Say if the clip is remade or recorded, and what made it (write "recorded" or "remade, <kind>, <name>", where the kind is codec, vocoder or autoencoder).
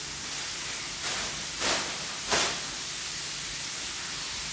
recorded